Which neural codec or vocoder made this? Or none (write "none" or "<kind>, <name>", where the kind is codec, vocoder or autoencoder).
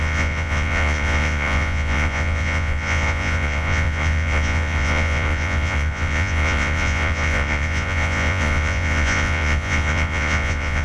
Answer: vocoder, Vocos